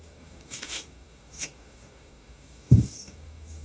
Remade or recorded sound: remade